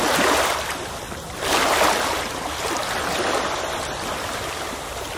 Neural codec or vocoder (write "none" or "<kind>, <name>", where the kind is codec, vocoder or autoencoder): none